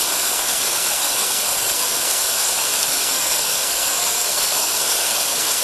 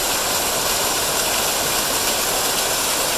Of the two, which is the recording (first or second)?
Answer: second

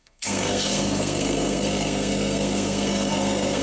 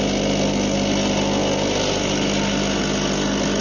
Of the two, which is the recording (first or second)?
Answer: second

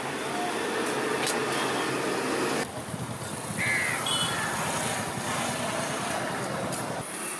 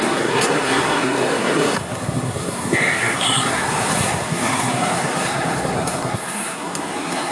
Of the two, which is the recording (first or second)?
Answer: first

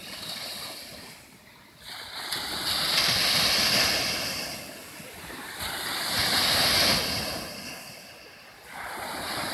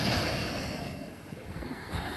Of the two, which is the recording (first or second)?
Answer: first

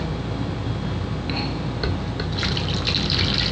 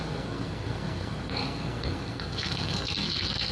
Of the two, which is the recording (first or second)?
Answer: first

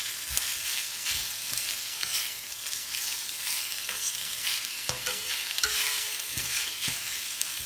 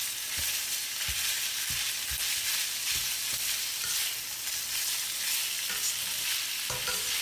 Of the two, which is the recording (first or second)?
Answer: second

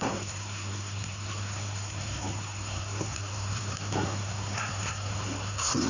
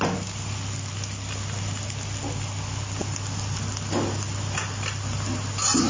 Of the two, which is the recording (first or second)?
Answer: second